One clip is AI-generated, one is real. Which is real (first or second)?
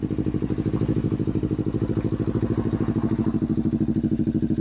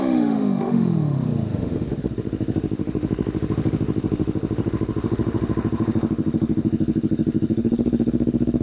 first